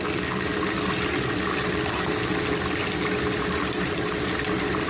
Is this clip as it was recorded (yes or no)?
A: yes